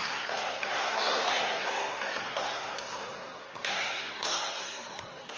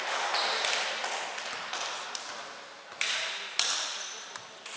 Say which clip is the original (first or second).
second